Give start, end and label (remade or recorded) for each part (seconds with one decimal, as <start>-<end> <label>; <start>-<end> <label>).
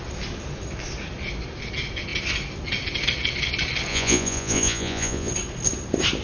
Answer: 0.0-3.9 recorded; 3.9-5.3 remade; 5.3-6.2 recorded